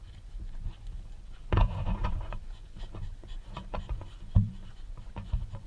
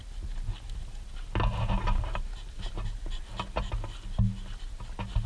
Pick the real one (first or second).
second